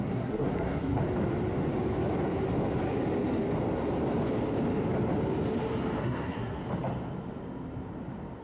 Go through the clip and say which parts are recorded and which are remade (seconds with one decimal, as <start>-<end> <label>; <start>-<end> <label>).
0.0-1.0 remade; 1.0-6.0 recorded; 6.0-6.6 remade; 6.6-8.4 recorded